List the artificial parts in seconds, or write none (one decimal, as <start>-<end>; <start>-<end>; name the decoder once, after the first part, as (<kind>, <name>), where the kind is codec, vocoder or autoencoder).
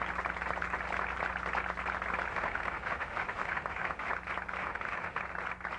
2.3-4.1 (autoencoder, DAC-VAE); 4.6-5.2